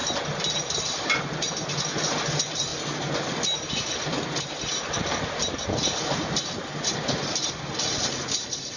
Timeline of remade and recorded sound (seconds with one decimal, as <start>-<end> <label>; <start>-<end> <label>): 0.0-8.8 recorded